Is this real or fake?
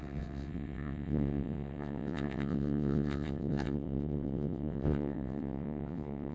fake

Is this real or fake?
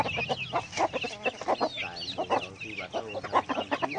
real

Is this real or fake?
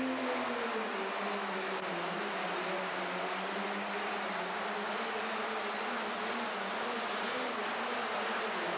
real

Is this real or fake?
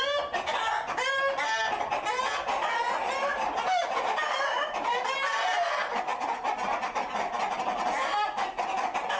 real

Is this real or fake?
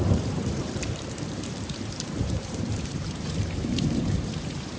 fake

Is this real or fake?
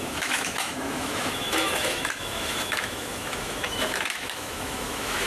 fake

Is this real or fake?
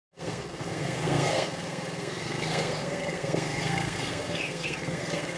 fake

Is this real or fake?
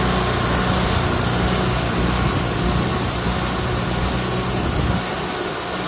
real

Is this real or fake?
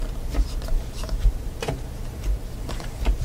fake